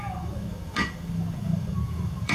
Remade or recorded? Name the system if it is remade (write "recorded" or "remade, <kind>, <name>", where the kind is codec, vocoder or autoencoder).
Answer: remade, codec, DAC